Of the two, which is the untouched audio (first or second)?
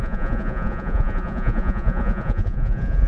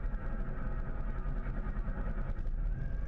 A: second